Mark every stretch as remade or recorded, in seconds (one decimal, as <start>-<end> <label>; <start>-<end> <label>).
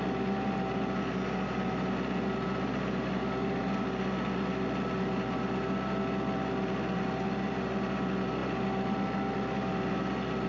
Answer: 0.0-10.5 recorded